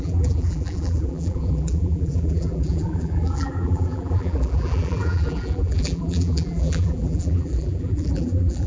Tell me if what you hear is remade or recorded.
remade